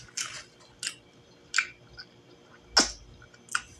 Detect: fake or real real